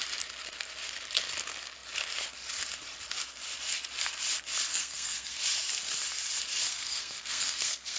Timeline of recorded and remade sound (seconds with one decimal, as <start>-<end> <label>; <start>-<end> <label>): 0.0-4.7 recorded; 4.7-5.4 remade; 5.4-6.7 recorded; 6.7-8.0 remade